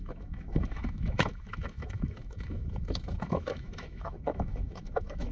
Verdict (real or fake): fake